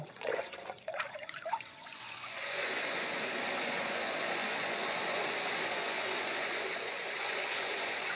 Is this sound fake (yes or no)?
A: yes